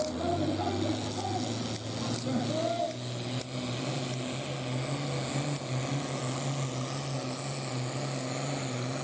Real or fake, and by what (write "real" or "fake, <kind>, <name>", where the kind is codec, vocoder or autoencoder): real